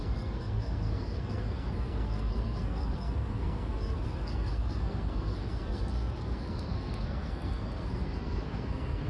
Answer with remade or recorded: remade